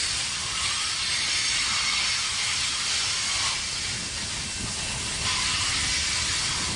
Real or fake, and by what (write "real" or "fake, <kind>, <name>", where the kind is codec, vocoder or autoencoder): real